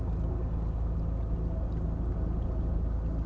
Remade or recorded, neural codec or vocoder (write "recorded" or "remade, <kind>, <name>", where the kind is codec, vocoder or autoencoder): recorded